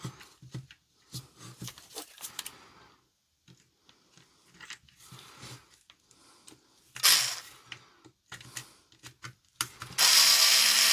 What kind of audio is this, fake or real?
real